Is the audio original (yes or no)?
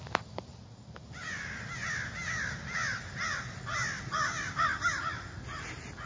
yes